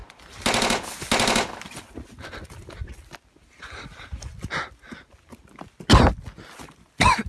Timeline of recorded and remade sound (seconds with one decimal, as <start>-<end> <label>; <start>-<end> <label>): 0.0-7.3 recorded